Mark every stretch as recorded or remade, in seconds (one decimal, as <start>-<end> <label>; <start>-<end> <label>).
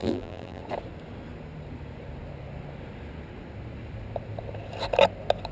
0.0-0.6 remade; 0.6-5.5 recorded